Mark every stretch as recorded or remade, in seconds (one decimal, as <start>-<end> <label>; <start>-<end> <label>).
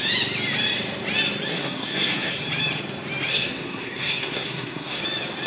0.0-1.5 recorded; 1.5-2.4 remade; 2.4-3.3 recorded; 3.3-5.0 remade; 5.0-5.5 recorded